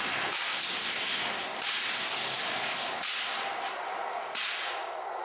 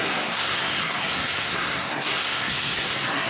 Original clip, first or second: first